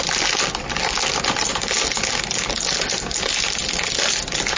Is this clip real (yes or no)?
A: yes